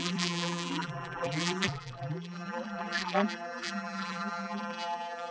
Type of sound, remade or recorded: remade